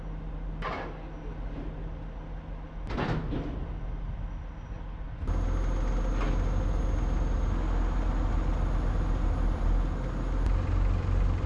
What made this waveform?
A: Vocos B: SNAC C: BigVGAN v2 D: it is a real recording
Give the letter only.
D